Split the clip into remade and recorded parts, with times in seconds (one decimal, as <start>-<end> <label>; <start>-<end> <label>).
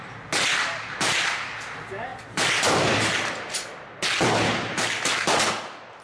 0.0-6.0 recorded